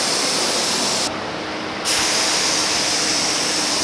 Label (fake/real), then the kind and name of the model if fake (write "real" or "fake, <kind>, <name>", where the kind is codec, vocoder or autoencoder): real